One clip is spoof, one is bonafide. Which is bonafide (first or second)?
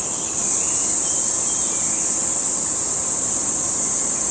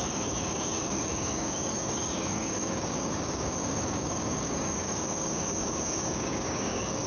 first